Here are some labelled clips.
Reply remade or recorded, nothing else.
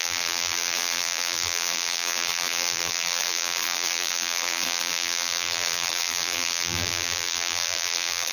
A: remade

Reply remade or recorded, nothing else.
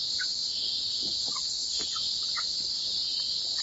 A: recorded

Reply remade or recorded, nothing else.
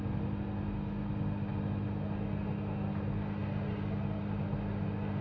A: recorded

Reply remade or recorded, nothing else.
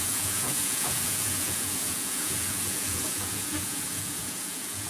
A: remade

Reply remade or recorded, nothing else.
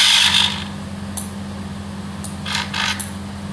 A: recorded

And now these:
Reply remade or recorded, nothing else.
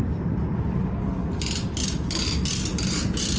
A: recorded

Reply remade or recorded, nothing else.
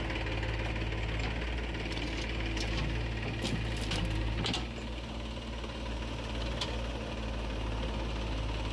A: recorded